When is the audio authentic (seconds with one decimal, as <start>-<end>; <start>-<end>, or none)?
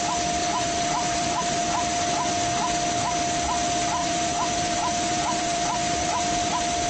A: 0.0-0.4; 1.6-4.0; 6.5-6.9